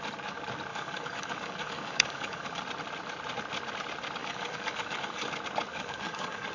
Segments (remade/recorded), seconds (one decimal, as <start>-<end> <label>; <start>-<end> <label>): 0.0-0.7 recorded; 0.7-2.6 remade; 2.6-4.2 recorded; 4.2-5.3 remade; 5.3-5.7 recorded; 5.7-6.5 remade